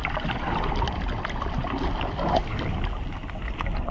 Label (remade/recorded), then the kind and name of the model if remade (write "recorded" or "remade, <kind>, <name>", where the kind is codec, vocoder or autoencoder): recorded